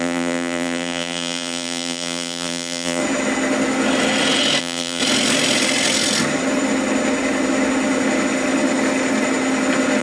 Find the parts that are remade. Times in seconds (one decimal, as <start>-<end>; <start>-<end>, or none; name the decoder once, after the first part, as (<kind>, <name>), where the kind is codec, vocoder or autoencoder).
0.0-3.0 (vocoder, BigVGAN v2); 4.6-5.0